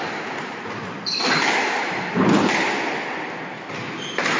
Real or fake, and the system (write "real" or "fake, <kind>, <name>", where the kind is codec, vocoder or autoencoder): real